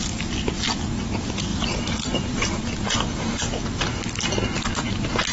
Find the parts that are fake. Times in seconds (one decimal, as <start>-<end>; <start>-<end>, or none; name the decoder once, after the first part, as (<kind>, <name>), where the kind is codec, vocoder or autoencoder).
1.5-3.4 (vocoder, BigVGAN v2)